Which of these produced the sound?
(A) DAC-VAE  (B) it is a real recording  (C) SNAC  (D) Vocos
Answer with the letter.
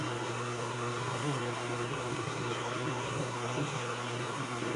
C